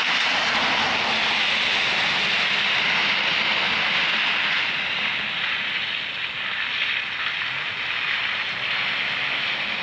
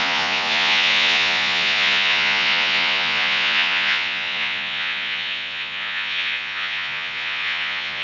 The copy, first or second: second